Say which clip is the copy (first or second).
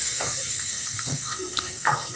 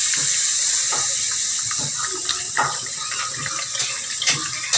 first